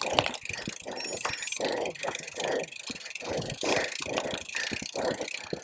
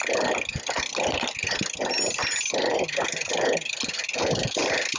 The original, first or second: second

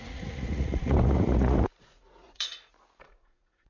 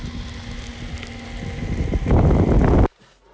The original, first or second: second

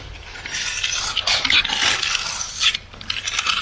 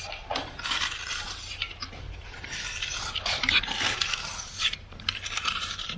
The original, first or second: first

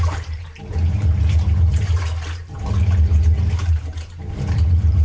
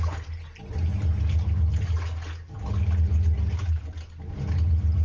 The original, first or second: second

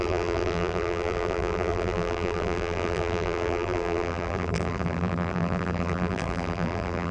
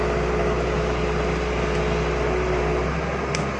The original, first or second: second